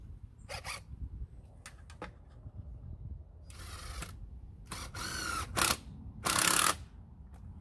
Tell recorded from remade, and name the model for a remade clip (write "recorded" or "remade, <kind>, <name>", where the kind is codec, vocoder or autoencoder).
recorded